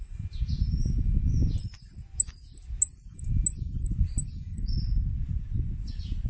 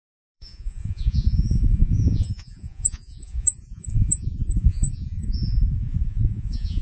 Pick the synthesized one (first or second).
second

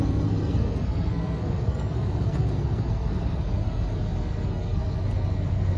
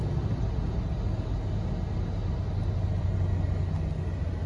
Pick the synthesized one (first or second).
first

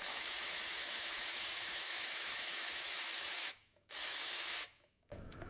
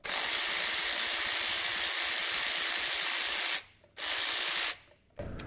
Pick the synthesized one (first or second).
first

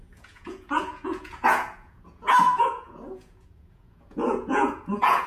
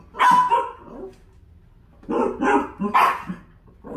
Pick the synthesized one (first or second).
first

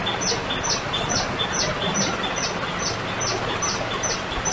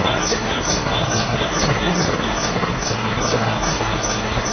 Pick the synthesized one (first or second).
second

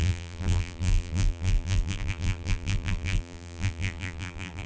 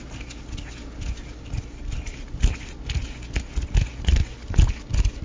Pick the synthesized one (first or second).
first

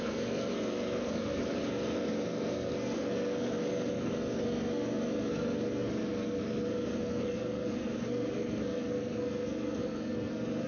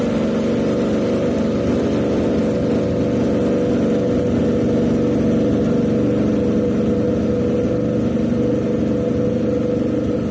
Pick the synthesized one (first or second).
first